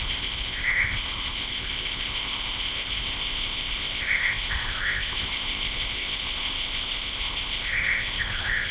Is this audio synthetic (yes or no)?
yes